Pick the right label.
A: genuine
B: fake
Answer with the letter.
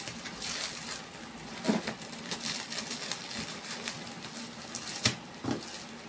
A